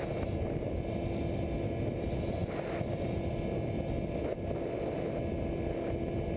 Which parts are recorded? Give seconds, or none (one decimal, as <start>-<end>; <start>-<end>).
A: 0.0-6.4